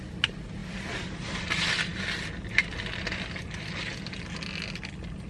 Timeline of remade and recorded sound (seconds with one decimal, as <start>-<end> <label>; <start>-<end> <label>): 0.0-5.3 recorded